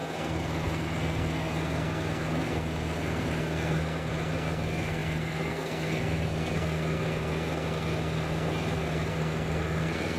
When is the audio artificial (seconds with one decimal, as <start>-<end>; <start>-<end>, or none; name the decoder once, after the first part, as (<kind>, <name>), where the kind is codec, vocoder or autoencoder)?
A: 0.0-10.2 (codec, SNAC)